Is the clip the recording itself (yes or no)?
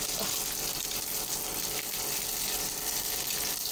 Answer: no